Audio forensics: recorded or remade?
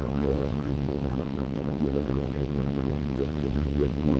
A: remade